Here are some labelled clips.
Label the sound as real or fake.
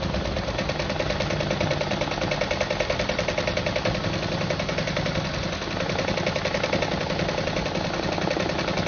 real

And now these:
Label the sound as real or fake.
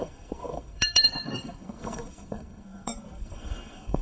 fake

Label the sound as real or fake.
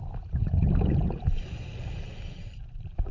real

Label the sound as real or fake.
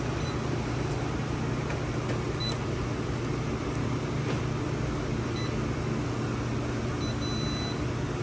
real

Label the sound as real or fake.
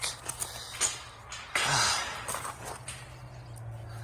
real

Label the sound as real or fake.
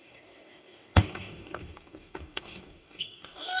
fake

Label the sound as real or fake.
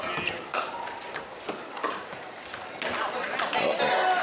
real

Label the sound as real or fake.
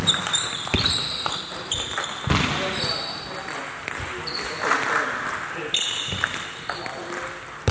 real